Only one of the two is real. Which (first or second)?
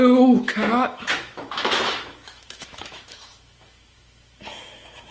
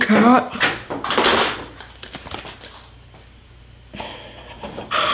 second